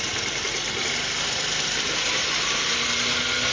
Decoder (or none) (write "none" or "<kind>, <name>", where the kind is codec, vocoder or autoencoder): none